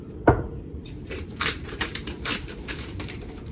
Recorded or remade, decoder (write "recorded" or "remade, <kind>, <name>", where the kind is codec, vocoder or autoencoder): remade, vocoder, BigVGAN v2